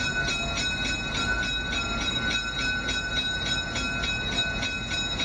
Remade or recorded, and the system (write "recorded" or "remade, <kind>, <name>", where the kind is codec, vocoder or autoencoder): recorded